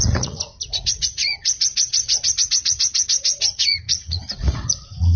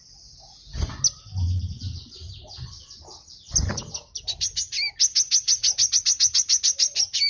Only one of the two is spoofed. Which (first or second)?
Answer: first